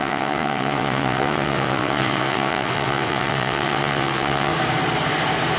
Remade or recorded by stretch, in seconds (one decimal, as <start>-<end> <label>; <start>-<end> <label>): 0.0-4.5 remade; 4.5-5.6 recorded